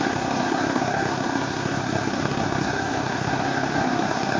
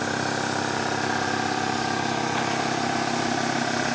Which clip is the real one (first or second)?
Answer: second